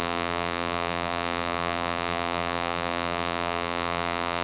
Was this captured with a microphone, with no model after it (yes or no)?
no